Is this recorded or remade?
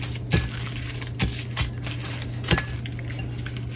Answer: recorded